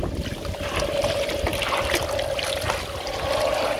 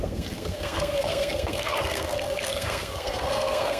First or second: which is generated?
second